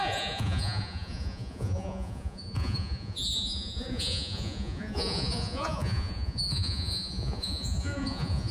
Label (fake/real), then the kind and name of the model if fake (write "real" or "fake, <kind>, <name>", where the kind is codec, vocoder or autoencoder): fake, vocoder, Vocos